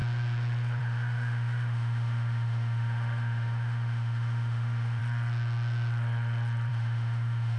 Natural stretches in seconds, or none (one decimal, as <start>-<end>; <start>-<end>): 0.0-0.8; 5.0-6.7